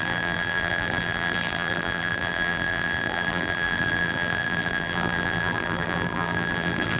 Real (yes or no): no